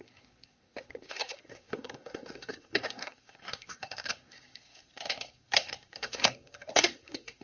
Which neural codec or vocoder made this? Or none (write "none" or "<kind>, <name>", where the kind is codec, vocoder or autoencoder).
codec, SNAC